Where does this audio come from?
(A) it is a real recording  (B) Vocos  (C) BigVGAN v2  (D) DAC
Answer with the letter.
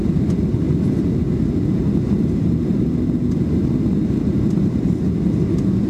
A